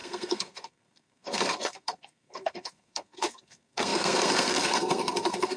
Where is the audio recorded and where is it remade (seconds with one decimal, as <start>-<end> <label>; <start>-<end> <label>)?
0.0-5.6 remade